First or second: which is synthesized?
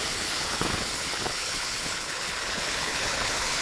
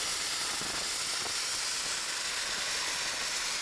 first